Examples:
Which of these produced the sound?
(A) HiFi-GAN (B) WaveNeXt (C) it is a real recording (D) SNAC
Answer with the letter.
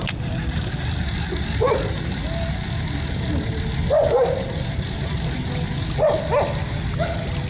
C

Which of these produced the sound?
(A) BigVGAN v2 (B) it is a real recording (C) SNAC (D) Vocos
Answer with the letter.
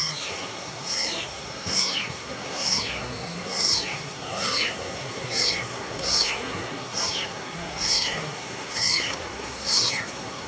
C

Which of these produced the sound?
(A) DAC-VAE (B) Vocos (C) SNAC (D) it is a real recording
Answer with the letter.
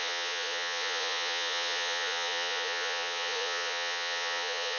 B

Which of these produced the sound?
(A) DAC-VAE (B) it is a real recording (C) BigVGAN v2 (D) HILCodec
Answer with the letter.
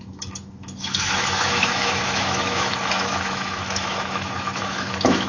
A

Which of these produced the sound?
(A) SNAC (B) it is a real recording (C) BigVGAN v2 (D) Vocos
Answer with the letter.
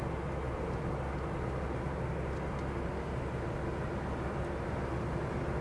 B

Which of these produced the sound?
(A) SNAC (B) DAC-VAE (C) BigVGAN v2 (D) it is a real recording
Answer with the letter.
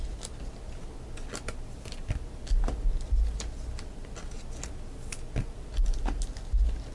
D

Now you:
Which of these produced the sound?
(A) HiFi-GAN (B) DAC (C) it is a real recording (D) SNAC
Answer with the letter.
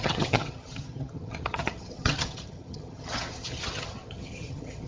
A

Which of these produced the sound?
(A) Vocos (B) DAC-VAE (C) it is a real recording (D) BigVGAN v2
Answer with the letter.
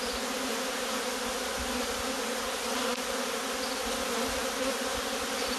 C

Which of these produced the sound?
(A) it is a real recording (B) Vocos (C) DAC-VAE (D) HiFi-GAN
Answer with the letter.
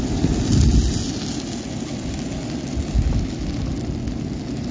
A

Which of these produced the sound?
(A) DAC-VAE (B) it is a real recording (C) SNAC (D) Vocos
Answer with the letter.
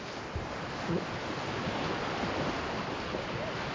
B